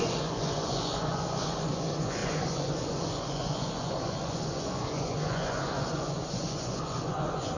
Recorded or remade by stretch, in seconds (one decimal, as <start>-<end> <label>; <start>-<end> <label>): 0.0-7.6 remade